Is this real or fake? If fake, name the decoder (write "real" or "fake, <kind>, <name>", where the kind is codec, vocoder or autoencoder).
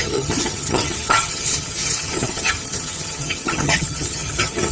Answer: fake, vocoder, HiFi-GAN